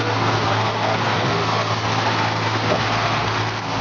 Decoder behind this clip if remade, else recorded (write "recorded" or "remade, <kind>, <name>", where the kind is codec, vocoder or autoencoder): remade, codec, SNAC